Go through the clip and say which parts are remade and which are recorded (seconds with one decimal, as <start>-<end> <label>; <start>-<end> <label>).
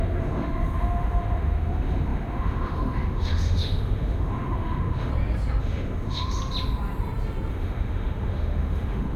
0.0-5.1 remade; 5.1-5.6 recorded; 5.6-6.4 remade; 6.4-7.5 recorded; 7.5-9.2 remade